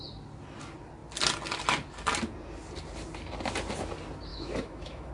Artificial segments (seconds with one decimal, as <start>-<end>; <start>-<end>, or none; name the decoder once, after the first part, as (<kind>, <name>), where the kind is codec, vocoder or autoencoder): 4.3-5.1 (autoencoder, DAC-VAE)